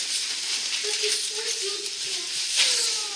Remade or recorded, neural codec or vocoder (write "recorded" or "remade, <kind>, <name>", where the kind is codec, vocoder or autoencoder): recorded